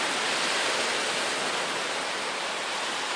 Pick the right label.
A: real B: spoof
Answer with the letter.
A